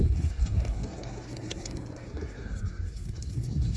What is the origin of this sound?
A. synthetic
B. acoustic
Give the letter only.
A